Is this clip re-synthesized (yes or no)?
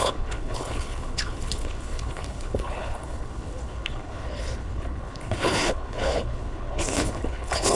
yes